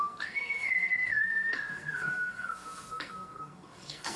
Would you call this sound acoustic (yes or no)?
no